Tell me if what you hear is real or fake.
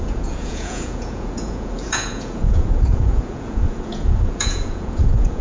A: fake